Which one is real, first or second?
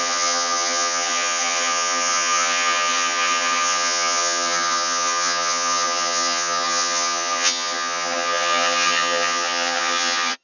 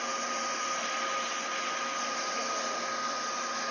second